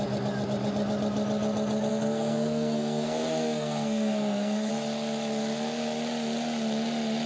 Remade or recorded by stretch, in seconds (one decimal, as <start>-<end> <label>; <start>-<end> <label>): 0.0-1.9 recorded; 1.9-4.7 remade; 4.7-7.3 recorded